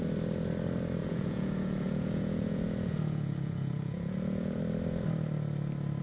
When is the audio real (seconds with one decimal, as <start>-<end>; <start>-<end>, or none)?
0.0-1.0; 4.6-6.0